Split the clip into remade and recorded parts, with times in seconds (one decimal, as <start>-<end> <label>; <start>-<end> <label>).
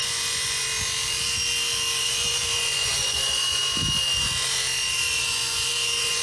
0.0-0.6 remade; 0.6-2.0 recorded; 2.0-3.6 remade; 3.6-5.2 recorded; 5.2-6.2 remade